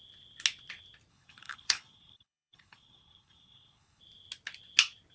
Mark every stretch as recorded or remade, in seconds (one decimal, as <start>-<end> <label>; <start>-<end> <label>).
0.0-1.1 recorded; 1.1-4.0 remade; 4.0-5.1 recorded